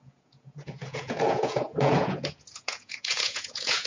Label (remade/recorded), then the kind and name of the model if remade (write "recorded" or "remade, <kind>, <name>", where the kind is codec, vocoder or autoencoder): remade, vocoder, Vocos